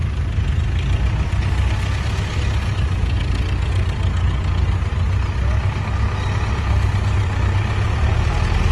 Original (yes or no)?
yes